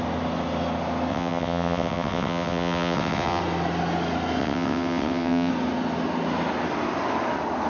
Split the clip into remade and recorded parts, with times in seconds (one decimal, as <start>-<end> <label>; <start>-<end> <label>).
0.0-1.1 recorded; 1.1-3.4 remade; 3.4-4.4 recorded; 4.4-5.5 remade; 5.5-7.7 recorded